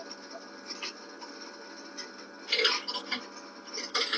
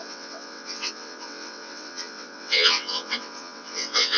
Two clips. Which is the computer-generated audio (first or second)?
second